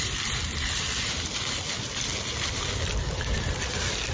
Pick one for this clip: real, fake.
real